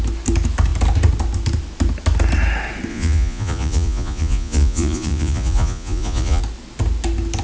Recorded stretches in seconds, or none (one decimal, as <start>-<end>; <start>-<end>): 0.0-2.9; 6.4-7.4